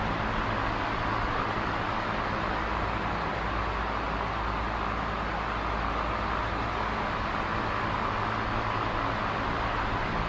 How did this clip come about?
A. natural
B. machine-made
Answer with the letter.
A